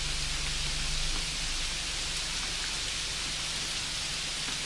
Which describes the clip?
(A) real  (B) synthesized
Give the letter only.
A